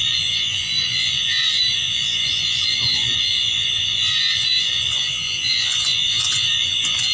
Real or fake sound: fake